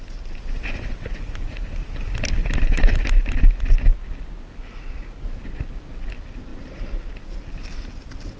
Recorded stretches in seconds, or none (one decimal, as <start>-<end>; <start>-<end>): 0.0-2.4; 3.2-6.5; 7.2-8.4